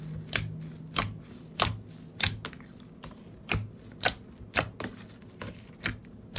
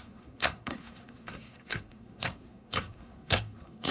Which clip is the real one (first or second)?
first